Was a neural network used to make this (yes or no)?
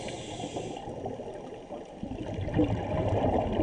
no